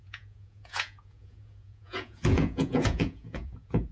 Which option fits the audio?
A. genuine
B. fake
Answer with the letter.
B